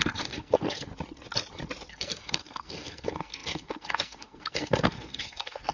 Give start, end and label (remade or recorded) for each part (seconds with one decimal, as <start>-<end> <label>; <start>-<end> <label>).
0.0-0.9 remade; 0.9-1.9 recorded; 1.9-5.7 remade